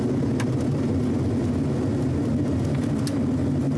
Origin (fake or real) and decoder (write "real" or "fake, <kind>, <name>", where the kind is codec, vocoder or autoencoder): real